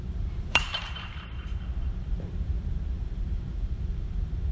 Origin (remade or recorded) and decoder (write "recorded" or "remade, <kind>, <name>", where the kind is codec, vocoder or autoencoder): remade, vocoder, BigVGAN v2